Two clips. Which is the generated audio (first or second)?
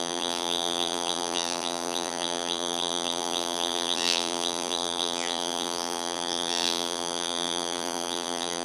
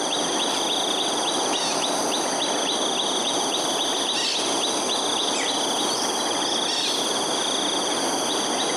first